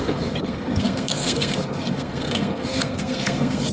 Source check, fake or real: fake